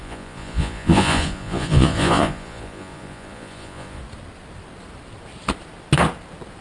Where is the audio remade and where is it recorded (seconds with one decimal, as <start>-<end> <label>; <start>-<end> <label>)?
0.0-4.0 remade; 4.0-6.6 recorded